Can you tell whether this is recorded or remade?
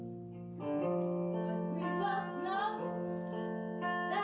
recorded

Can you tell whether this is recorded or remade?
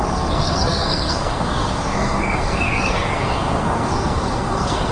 remade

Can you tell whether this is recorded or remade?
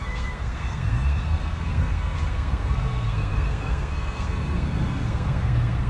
remade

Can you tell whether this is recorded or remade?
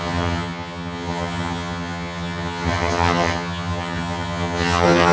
remade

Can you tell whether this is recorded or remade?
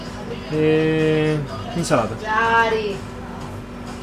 recorded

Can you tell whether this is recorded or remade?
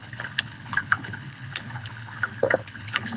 remade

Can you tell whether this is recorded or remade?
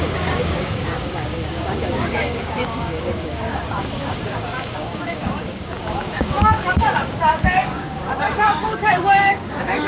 remade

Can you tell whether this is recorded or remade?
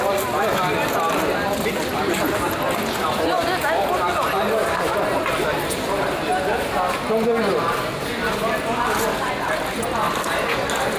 recorded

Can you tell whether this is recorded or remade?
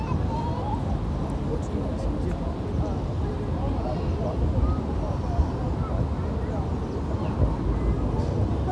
recorded